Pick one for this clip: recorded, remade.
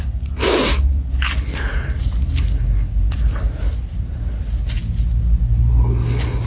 recorded